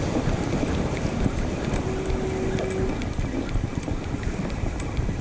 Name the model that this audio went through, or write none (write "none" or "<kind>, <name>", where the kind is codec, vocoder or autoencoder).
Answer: none